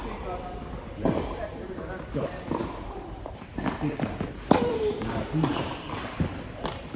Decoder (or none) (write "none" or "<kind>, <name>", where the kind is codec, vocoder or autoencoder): vocoder, BigVGAN v2